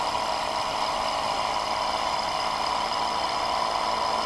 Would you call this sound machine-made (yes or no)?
yes